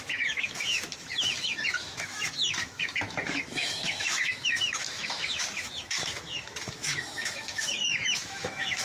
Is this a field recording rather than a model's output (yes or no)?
no